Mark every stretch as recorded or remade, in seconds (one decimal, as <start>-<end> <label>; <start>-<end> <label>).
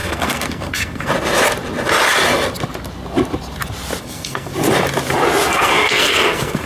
0.0-1.1 remade; 1.1-4.0 recorded; 4.0-4.5 remade; 4.5-5.5 recorded; 5.5-6.7 remade